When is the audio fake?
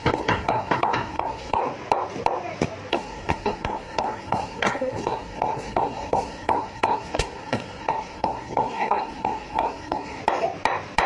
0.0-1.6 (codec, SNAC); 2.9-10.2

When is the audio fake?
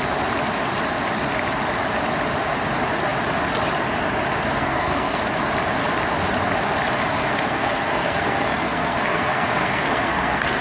4.6-5.2 (codec, SNAC); 7.2-10.6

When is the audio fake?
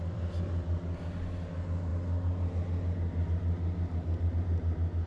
none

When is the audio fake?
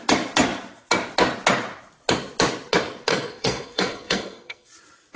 3.1-4.7 (codec, SNAC)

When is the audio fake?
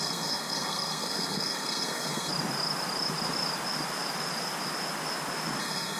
0.0-2.3 (codec, SNAC); 5.6-6.0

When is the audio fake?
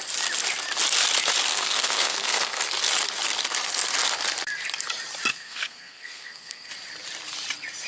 1.5-2.6 (codec, SNAC); 5.3-6.7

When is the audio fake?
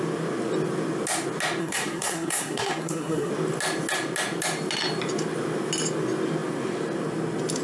1.6-3.3 (codec, SNAC)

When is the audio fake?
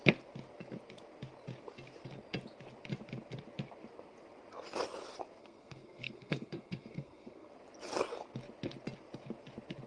5.4-7.5 (codec, SNAC)